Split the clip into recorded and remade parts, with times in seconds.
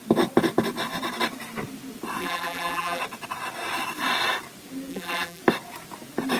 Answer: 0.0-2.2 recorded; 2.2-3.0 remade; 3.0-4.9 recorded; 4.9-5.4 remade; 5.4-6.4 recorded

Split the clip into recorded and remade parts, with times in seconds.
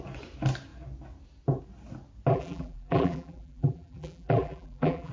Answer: 0.0-2.3 recorded; 2.3-5.1 remade